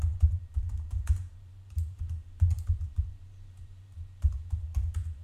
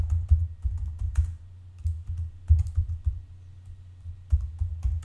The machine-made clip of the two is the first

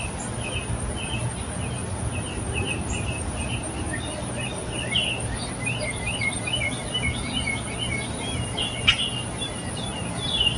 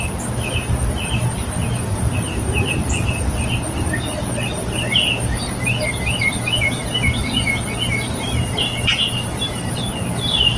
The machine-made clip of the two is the first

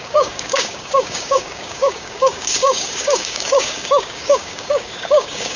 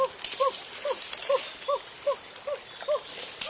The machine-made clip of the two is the first